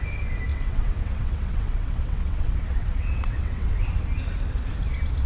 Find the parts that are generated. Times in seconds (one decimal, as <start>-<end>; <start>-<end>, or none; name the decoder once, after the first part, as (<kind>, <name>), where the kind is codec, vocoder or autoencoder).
0.5-3.7 (vocoder, WaveNeXt)